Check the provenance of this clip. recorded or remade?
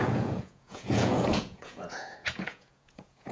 remade